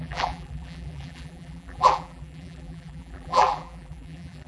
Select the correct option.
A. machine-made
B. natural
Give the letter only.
A